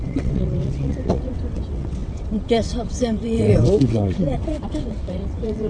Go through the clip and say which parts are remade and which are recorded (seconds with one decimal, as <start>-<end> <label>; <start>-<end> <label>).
0.0-5.7 remade